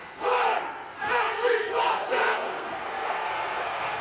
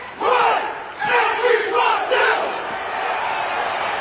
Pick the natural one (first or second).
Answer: second